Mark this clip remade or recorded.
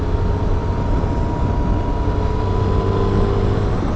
recorded